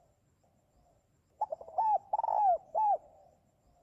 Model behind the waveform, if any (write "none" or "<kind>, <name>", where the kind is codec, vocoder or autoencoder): vocoder, BigVGAN v2